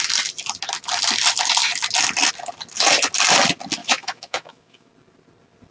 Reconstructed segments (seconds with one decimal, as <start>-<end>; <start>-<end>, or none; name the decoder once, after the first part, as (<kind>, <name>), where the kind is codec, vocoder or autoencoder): 3.8-4.9 (autoencoder, DAC-VAE)